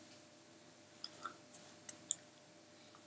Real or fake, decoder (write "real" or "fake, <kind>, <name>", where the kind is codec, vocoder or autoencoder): real